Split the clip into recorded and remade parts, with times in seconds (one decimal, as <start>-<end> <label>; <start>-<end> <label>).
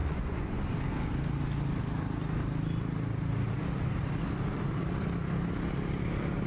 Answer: 0.0-0.6 remade; 0.6-6.5 recorded